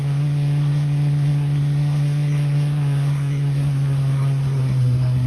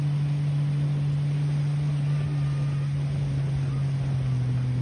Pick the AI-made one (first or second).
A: first